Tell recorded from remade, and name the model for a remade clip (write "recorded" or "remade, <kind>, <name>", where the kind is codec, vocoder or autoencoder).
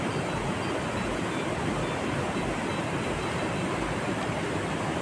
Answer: recorded